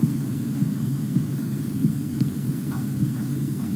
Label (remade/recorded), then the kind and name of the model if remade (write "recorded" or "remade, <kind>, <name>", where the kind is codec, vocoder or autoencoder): remade, codec, SNAC